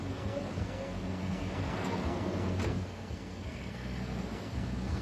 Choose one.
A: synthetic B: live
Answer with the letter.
A